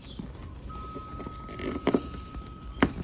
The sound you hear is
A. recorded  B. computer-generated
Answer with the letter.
A